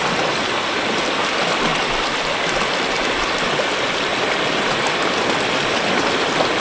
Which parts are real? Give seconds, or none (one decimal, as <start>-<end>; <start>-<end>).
1.7-4.9